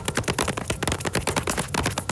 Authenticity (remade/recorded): recorded